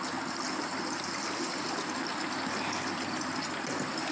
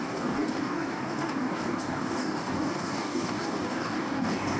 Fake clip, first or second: second